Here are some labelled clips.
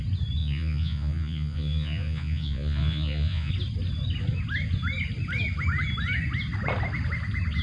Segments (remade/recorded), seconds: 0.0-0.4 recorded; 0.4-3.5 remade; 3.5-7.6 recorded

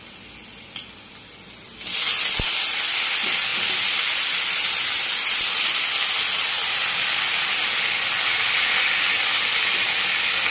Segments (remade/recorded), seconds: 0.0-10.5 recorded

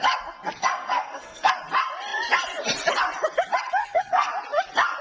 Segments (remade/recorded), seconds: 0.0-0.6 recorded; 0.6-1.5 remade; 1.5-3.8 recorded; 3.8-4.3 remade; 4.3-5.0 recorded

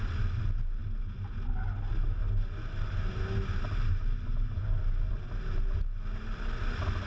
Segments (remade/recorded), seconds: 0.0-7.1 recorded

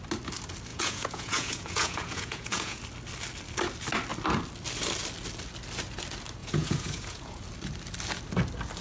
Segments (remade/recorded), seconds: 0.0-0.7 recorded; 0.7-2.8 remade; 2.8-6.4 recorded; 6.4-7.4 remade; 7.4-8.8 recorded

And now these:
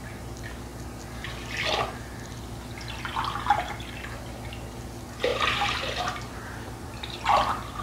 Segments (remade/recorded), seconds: 0.0-5.3 recorded; 5.3-7.8 remade

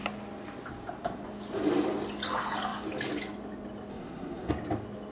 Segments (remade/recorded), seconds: 0.0-3.9 recorded; 3.9-4.5 remade; 4.5-5.1 recorded

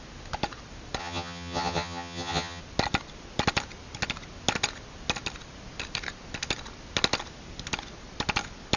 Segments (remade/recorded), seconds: 0.0-1.0 recorded; 1.0-2.6 remade; 2.6-8.8 recorded